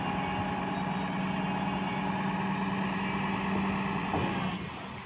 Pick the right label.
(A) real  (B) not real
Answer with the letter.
A